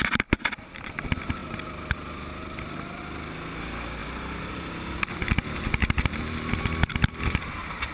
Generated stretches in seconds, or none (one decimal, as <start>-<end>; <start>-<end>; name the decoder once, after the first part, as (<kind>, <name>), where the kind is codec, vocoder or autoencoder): 4.0-6.5 (vocoder, BigVGAN v2)